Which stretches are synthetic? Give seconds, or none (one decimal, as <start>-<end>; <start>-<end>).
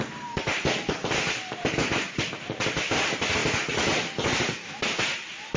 none